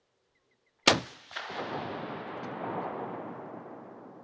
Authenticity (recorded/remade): recorded